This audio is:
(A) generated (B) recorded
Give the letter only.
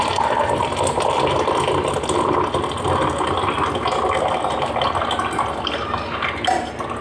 B